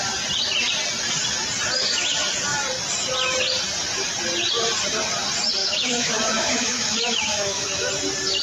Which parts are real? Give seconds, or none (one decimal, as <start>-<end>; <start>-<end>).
0.0-5.6; 7.9-8.4